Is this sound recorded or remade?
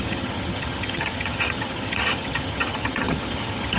remade